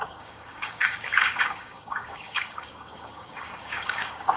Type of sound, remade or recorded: remade